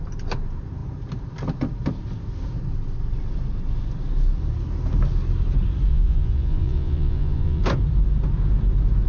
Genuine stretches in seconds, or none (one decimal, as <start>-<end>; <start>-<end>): 0.0-5.9; 7.6-9.1